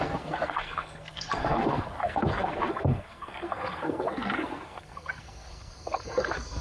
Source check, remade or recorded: remade